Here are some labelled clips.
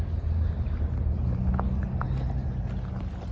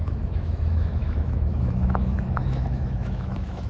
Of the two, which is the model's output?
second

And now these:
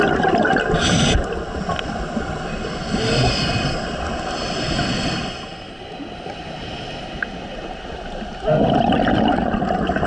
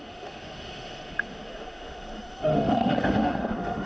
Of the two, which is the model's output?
second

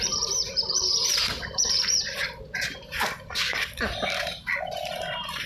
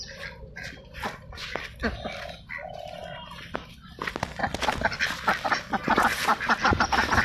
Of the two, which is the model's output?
first